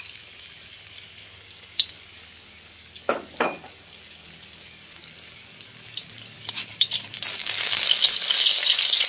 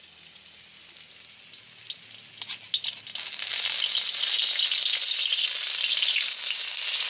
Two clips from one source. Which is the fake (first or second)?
first